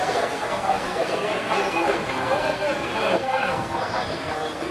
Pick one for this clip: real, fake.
fake